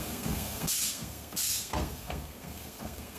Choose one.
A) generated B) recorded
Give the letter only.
A